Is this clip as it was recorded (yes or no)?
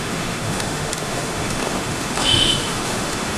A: no